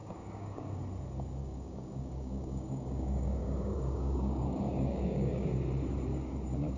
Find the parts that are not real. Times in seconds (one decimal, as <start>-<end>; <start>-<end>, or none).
0.0-0.8; 1.4-5.5; 6.1-6.8